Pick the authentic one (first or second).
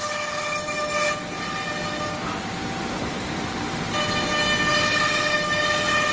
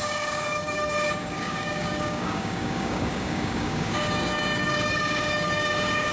first